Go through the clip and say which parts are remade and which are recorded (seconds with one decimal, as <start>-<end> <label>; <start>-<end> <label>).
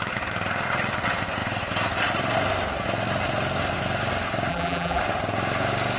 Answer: 0.0-4.5 recorded; 4.5-5.0 remade; 5.0-6.0 recorded